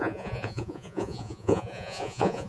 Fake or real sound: fake